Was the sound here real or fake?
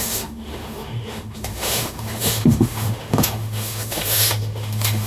fake